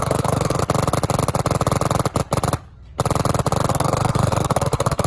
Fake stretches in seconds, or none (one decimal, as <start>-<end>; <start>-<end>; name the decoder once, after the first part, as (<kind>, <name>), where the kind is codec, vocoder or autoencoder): 0.0-0.6 (codec, SNAC); 3.7-5.1